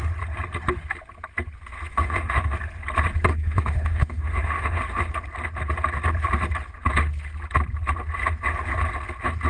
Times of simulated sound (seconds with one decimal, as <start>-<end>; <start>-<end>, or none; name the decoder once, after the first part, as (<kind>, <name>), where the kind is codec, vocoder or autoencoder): 1.9-2.4 (autoencoder, DAC-VAE); 3.3-4.8